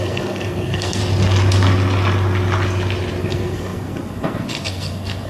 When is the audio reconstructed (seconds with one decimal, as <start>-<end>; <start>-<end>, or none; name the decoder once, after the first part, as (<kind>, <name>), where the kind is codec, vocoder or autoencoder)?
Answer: 0.0-1.0 (codec, SNAC); 3.2-5.3